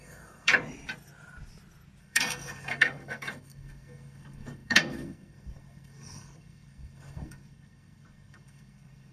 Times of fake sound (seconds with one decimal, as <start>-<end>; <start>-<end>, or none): 0.0-0.5; 2.0-9.1